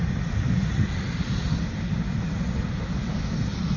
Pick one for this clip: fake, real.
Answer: real